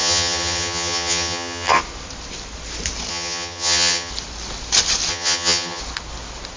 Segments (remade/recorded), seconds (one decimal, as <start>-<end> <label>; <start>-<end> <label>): 0.0-1.8 remade; 1.8-3.1 recorded; 3.1-4.1 remade; 4.1-5.1 recorded; 5.1-5.8 remade; 5.8-6.6 recorded